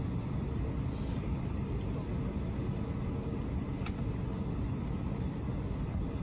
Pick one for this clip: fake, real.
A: real